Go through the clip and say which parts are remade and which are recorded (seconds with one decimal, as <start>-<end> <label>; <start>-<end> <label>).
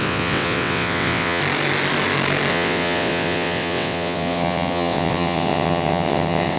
0.0-1.4 remade; 1.4-2.5 recorded; 2.5-6.6 remade